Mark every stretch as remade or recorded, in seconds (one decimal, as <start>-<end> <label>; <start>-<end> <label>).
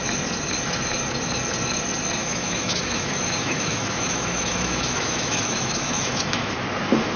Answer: 0.0-2.2 recorded; 2.2-6.5 remade; 6.5-7.2 recorded